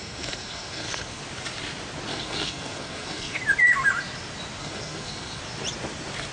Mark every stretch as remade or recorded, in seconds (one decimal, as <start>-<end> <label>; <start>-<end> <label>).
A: 0.0-1.2 remade; 1.2-2.1 recorded; 2.1-3.4 remade; 3.4-4.6 recorded; 4.6-5.4 remade; 5.4-6.3 recorded